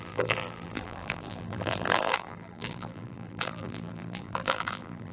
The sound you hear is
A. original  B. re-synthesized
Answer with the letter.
B